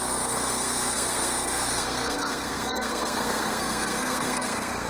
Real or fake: fake